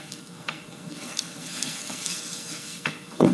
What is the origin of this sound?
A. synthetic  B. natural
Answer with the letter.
A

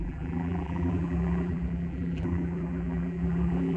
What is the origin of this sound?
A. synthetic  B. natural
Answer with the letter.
A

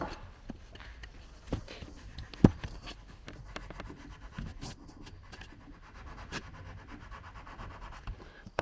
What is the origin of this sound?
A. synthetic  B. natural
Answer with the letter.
B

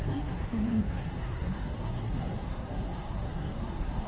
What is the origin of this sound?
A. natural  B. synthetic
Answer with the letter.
B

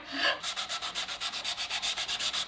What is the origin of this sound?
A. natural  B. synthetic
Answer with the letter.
A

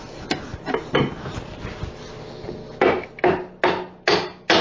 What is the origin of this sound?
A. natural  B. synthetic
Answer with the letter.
A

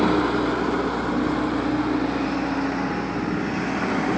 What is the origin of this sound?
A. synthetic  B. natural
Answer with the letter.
B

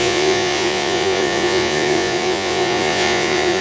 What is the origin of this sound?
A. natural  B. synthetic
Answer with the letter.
B